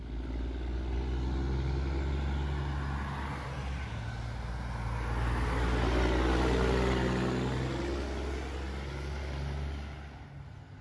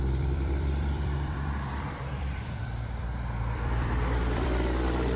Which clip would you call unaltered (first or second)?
first